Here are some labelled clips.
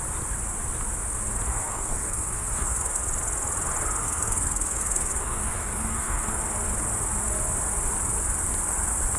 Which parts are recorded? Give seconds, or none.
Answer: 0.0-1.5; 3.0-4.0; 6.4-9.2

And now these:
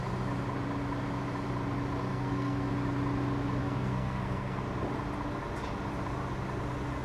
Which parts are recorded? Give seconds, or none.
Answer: 0.0-2.1; 2.7-3.6; 4.6-7.0